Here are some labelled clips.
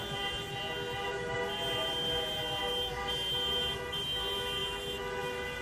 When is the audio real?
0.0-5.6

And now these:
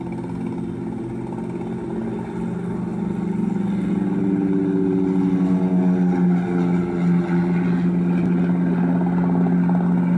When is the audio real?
0.0-10.2

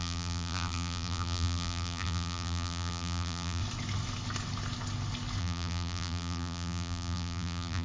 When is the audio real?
3.6-5.4

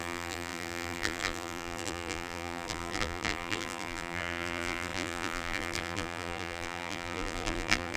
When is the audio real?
none